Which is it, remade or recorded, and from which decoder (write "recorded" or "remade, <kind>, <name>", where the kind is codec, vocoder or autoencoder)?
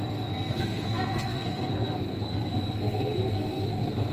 remade, codec, SNAC